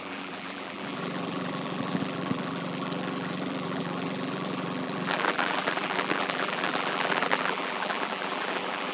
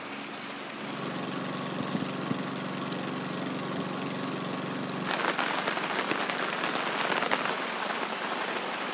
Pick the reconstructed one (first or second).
first